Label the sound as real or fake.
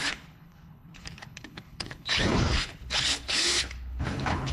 fake